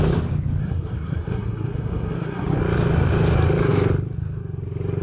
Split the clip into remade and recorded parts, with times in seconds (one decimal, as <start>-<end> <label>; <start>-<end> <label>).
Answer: 0.0-0.6 recorded; 0.6-2.6 remade; 2.6-5.0 recorded